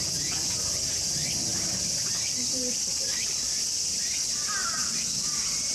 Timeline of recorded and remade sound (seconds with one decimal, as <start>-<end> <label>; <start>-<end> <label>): 0.0-1.5 recorded; 1.5-3.5 remade; 3.5-4.6 recorded; 4.6-5.3 remade; 5.3-5.7 recorded